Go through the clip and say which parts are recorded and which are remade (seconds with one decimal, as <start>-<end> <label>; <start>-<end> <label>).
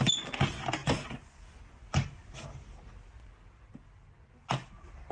0.0-0.8 recorded; 0.8-1.6 remade; 1.6-5.1 recorded